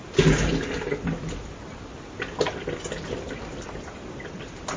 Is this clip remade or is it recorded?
recorded